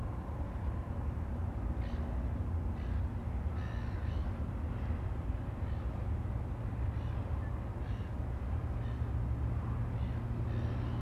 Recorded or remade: recorded